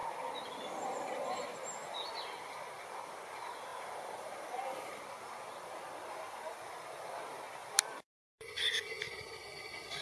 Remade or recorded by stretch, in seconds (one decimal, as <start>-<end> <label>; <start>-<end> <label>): 0.0-3.7 recorded; 3.7-5.0 remade; 5.0-7.6 recorded; 7.6-8.5 remade; 8.5-10.0 recorded